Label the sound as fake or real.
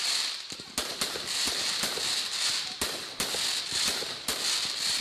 real